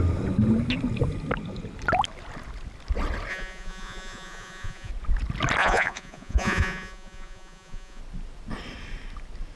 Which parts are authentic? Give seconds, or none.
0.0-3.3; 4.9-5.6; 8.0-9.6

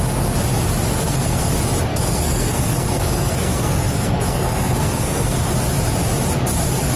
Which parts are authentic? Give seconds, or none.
0.0-0.9; 1.5-1.9; 5.5-7.0